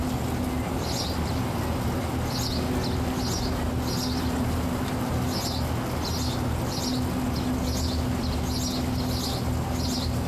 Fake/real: real